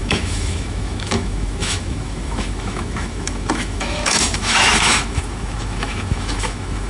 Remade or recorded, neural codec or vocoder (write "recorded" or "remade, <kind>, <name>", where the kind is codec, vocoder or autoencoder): remade, autoencoder, DAC-VAE